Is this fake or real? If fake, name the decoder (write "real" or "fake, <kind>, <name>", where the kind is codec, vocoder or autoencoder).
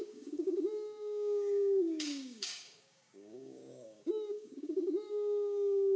fake, codec, DAC